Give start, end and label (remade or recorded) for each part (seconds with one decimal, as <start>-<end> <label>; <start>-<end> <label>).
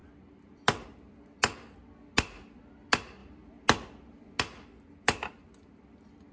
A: 0.0-6.3 recorded